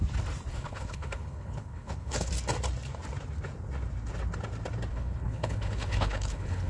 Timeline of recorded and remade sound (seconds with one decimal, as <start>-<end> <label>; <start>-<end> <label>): 0.0-0.5 recorded; 0.5-2.3 remade; 2.3-4.9 recorded; 4.9-6.7 remade